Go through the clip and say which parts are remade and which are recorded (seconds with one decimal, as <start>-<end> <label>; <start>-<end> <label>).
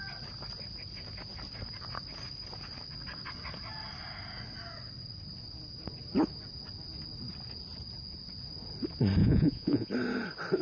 0.0-9.2 recorded; 9.2-9.9 remade; 9.9-10.6 recorded